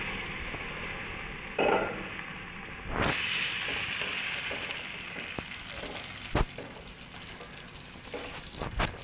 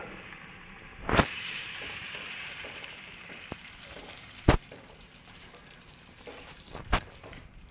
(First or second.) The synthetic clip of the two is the second